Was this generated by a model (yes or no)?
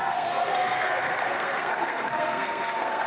yes